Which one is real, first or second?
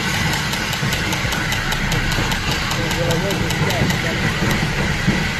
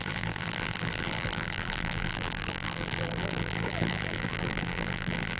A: first